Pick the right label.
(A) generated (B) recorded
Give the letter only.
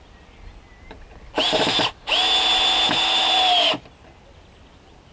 B